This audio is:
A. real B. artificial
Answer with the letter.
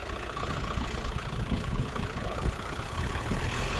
B